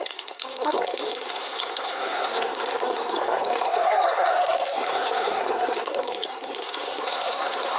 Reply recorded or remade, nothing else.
remade